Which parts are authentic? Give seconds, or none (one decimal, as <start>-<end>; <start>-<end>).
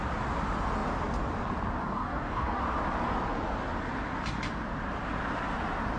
0.0-1.8; 2.6-6.0